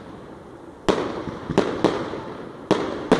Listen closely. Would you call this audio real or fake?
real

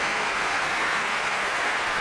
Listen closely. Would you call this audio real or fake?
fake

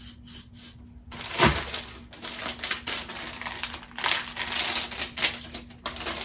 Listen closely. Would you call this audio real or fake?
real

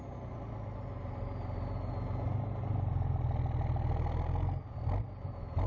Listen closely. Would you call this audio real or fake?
real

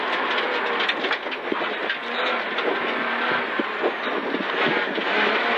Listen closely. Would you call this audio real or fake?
real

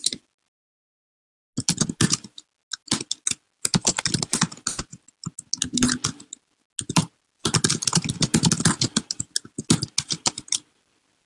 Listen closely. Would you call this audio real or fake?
real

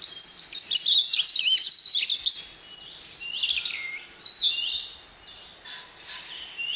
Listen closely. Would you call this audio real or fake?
real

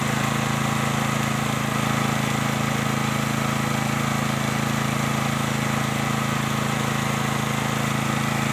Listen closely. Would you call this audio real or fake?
real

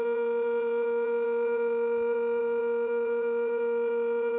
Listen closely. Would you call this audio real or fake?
fake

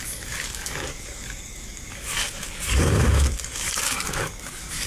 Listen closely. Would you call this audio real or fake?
fake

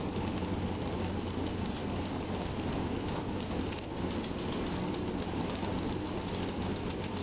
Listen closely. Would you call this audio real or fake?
real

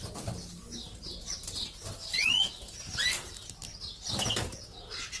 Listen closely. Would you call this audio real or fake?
real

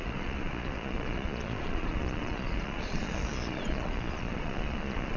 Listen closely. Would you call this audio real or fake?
fake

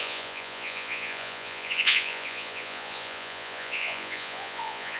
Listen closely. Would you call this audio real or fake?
fake